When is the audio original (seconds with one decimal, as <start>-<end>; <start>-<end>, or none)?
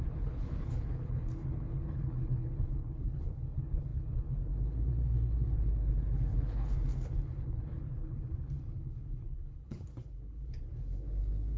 none